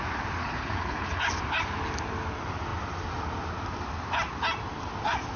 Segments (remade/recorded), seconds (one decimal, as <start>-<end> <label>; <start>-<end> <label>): 0.0-0.4 recorded; 0.4-1.2 remade; 1.2-5.4 recorded